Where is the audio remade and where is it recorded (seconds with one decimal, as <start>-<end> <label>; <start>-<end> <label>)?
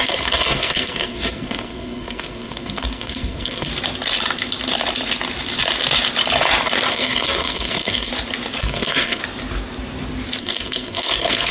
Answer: 0.0-3.7 remade; 3.7-6.9 recorded; 6.9-8.1 remade; 8.1-8.6 recorded; 8.6-9.2 remade; 9.2-10.4 recorded; 10.4-11.5 remade